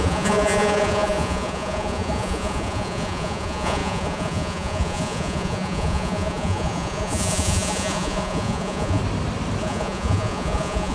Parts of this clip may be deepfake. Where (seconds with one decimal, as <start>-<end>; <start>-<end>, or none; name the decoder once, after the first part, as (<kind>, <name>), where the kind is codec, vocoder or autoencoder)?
0.0-9.0 (vocoder, Vocos); 9.6-10.9